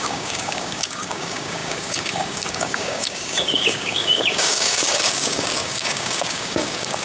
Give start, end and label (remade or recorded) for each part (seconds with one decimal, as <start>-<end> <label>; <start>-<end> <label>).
0.0-7.0 remade